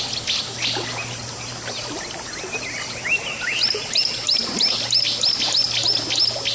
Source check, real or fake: real